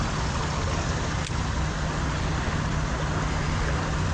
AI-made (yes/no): no